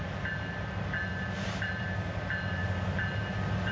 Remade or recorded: remade